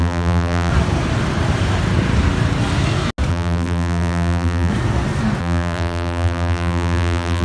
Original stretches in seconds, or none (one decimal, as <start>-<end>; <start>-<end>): 0.7-3.3; 4.7-5.4